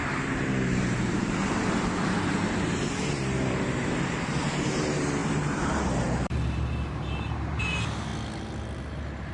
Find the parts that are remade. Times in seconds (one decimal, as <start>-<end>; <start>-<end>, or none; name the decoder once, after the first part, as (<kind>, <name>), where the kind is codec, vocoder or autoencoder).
0.0-8.1 (vocoder, BigVGAN v2); 8.8-9.3